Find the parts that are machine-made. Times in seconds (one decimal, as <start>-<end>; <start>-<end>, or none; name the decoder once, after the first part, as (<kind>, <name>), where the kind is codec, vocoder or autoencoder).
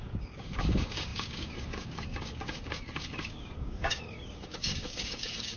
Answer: 0.0-5.6 (codec, DAC)